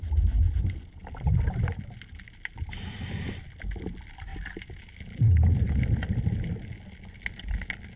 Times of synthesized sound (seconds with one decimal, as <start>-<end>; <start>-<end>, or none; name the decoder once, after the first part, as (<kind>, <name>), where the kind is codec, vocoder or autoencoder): none